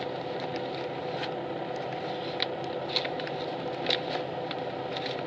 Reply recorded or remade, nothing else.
recorded